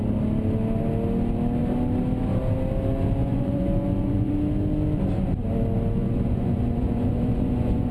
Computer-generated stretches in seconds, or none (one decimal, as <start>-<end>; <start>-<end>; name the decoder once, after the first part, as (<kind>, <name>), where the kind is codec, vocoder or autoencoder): 3.2-4.3 (vocoder, Vocos); 6.0-7.9